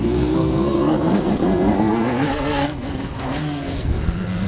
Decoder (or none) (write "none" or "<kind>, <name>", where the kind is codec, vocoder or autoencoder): codec, SNAC